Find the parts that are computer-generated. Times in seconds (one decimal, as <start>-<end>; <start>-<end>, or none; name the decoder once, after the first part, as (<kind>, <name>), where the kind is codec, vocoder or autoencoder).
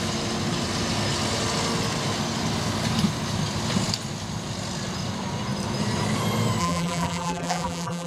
6.6-8.1 (vocoder, BigVGAN v2)